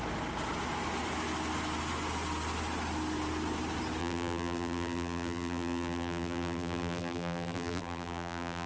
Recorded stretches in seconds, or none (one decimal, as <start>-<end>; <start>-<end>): 0.0-4.0